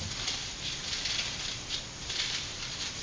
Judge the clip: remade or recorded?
remade